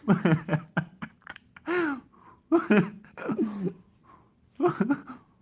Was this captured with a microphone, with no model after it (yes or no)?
yes